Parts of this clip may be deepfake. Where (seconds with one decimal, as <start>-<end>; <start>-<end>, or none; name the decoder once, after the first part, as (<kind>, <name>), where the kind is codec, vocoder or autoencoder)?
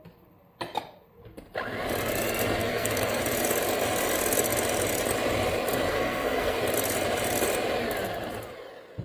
2.6-3.2 (codec, SNAC); 5.9-6.6